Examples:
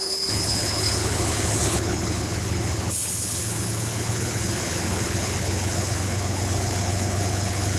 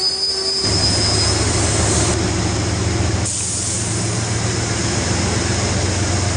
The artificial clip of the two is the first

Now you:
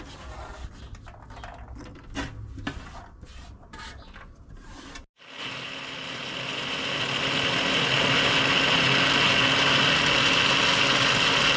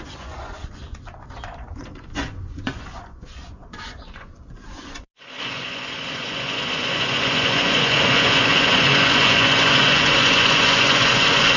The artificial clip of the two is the second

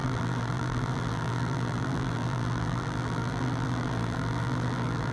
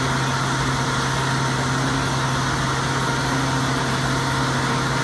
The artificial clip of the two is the first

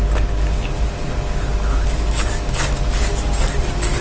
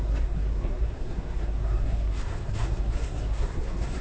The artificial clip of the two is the second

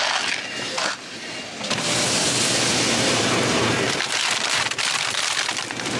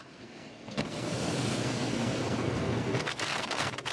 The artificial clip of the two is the second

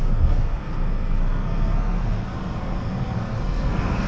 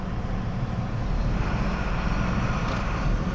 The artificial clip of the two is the first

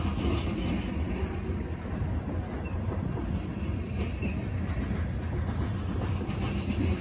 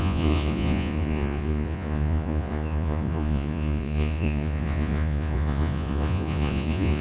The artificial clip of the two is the second